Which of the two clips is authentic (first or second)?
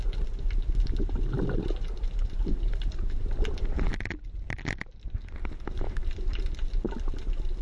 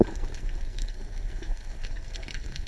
first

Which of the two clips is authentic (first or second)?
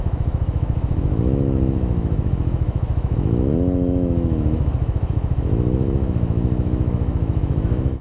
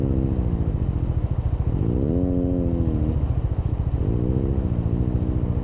second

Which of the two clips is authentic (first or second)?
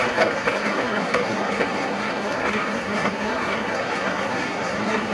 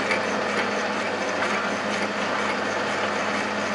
second